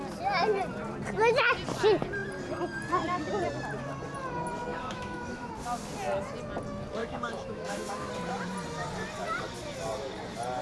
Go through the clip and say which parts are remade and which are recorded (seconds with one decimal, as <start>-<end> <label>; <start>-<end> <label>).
0.0-4.7 recorded; 4.7-5.5 remade; 5.5-7.0 recorded; 7.0-8.1 remade; 8.1-10.6 recorded